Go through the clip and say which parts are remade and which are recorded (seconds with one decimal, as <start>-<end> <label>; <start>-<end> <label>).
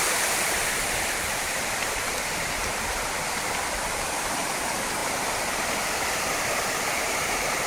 0.0-7.7 recorded